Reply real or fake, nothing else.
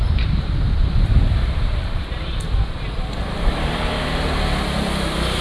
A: fake